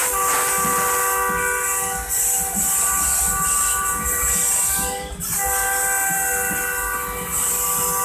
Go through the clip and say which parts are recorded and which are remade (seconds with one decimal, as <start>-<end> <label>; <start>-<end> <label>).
0.0-8.0 recorded